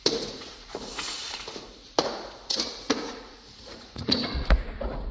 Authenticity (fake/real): fake